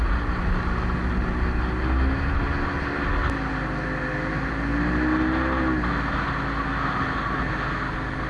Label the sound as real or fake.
real